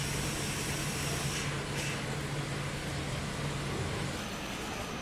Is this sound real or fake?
real